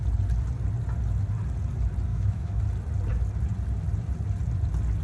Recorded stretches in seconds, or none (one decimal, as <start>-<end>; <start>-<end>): 0.0-2.1; 2.6-5.0